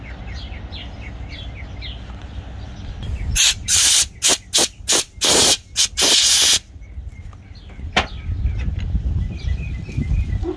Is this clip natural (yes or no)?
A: yes